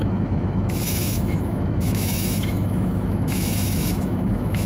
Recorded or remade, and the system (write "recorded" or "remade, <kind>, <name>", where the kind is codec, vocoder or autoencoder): remade, autoencoder, DAC-VAE